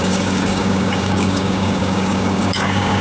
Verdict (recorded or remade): remade